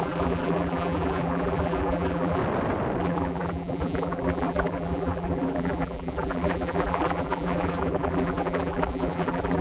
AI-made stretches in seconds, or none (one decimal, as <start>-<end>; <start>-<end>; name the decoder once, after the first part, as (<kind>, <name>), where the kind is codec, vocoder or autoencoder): 0.0-2.4 (vocoder, BigVGAN v2); 3.0-9.6